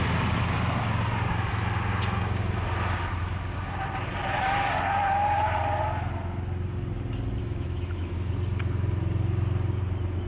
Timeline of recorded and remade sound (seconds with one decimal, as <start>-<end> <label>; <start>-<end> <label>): 0.0-7.4 recorded; 7.4-8.3 remade; 8.3-10.3 recorded